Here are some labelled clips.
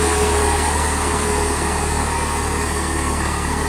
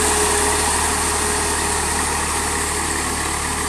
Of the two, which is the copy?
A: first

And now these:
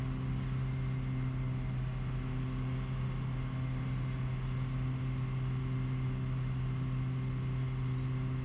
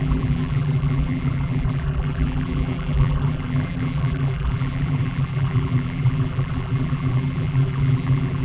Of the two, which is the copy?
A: second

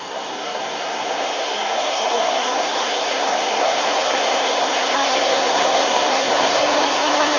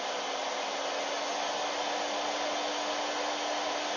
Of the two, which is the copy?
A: first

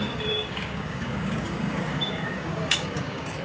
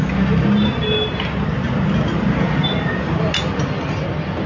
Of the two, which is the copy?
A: first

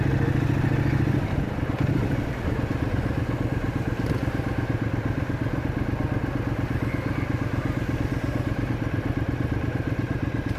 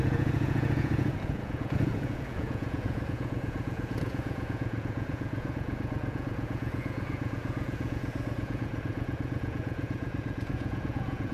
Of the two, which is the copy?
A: second